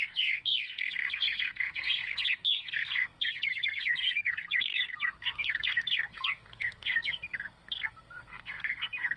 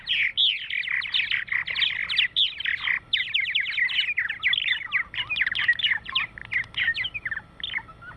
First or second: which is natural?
second